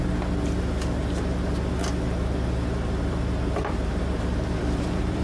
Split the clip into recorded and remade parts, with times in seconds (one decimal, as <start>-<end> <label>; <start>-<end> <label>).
0.0-3.1 recorded; 3.1-5.2 remade